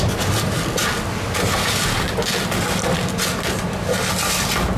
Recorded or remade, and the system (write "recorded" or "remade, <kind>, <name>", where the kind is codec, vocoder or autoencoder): recorded